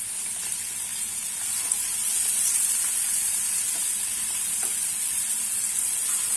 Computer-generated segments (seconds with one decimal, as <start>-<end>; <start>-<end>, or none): 0.0-6.4